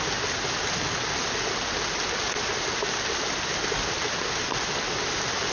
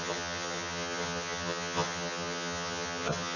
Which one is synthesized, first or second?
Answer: second